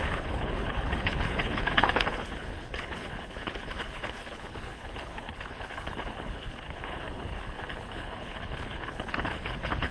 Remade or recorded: remade